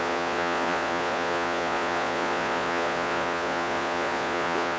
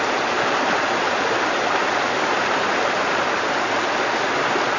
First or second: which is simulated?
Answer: first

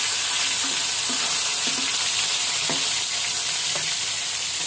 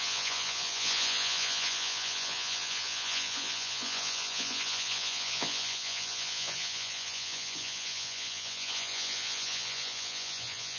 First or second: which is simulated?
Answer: second